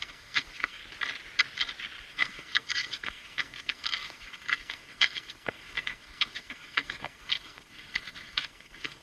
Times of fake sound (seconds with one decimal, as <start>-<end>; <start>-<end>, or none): 0.0-0.8; 2.1-9.0